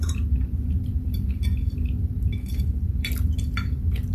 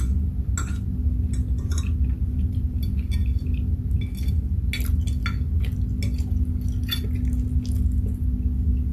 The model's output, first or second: first